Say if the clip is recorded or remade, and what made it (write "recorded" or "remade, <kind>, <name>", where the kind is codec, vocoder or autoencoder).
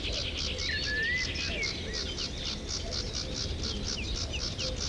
recorded